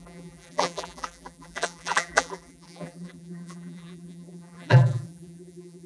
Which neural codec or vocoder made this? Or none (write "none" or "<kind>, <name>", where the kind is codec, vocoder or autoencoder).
vocoder, BigVGAN v2